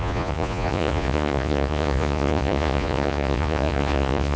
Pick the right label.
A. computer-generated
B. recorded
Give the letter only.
A